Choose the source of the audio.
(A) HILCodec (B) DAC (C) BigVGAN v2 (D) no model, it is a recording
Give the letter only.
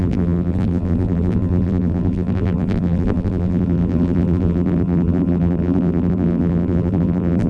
C